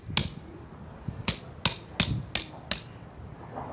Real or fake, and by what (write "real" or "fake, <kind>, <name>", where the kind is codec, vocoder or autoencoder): real